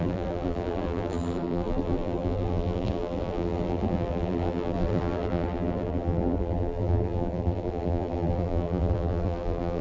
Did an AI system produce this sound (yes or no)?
yes